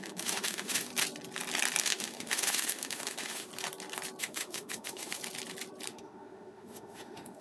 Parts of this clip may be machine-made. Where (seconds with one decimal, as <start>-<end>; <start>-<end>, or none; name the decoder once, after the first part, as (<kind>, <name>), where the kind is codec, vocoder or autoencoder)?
0.0-0.9 (autoencoder, DAC-VAE); 1.8-3.5; 4.2-5.2; 5.9-7.4